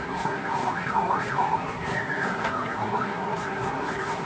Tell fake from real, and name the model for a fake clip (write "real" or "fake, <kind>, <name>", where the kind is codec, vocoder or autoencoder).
fake, codec, SNAC